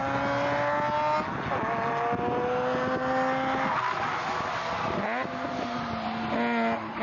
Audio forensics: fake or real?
real